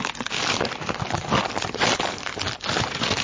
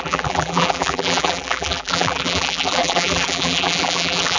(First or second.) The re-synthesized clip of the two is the second